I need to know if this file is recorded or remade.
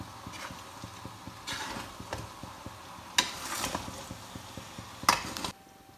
recorded